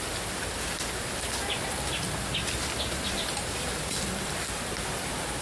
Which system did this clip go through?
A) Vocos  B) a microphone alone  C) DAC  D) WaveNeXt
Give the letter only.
B